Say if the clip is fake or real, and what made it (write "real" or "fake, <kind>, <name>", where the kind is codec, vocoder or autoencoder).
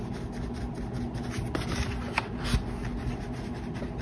real